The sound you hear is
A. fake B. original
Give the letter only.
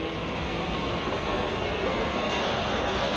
A